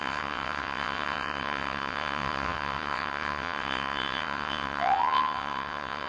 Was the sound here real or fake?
fake